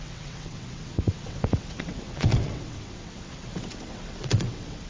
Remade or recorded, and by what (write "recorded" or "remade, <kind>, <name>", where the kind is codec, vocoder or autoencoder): remade, vocoder, WaveNeXt